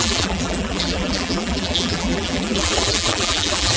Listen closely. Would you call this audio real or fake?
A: fake